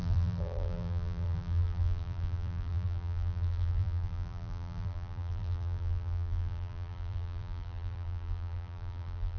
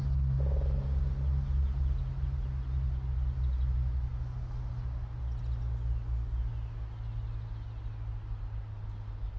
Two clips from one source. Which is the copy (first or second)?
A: first